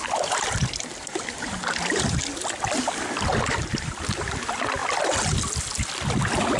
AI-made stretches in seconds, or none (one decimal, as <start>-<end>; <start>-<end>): none